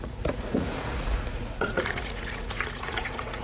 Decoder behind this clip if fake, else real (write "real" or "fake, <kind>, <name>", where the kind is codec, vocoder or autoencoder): fake, vocoder, Vocos